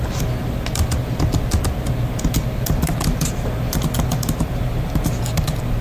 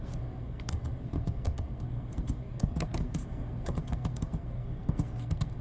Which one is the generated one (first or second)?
second